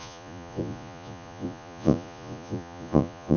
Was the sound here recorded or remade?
remade